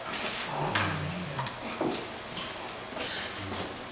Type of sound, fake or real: real